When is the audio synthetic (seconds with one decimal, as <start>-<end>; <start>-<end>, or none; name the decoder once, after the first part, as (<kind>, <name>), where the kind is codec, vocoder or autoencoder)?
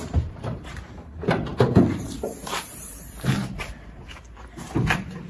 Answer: 0.0-5.3 (vocoder, BigVGAN v2)